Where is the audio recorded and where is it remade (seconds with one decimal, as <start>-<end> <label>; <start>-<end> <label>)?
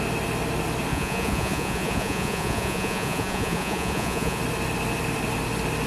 0.0-0.9 recorded; 0.9-4.4 remade; 4.4-5.9 recorded